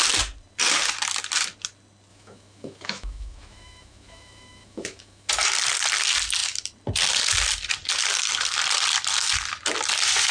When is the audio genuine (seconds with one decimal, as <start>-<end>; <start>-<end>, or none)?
0.0-2.1; 5.3-10.3

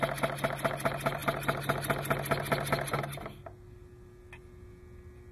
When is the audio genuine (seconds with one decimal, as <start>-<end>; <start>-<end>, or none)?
0.0-5.3